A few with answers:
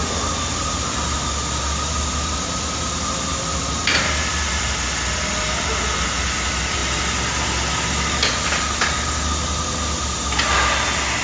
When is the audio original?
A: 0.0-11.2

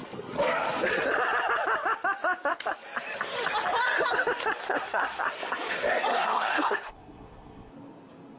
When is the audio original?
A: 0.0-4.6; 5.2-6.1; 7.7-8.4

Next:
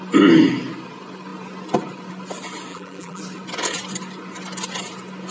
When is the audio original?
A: 0.0-2.7; 3.2-5.3

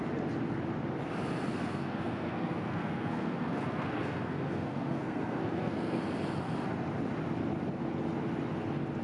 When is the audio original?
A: 0.0-1.5; 6.0-9.0

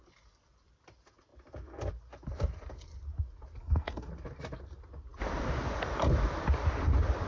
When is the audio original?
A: 0.0-3.6; 4.1-7.3

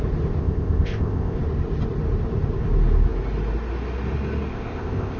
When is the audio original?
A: 0.0-0.4; 1.4-4.5

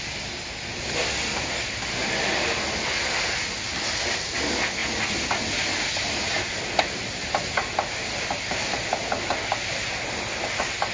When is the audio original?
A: 0.0-10.9

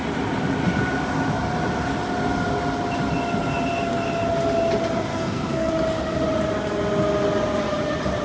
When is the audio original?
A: 0.0-5.1; 5.7-8.2